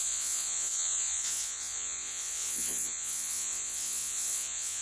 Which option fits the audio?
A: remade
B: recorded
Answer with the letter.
A